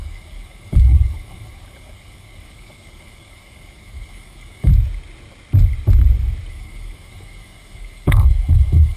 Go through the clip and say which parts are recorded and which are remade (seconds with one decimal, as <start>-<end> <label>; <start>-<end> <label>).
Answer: 0.0-4.7 remade; 4.7-6.5 recorded; 6.5-9.0 remade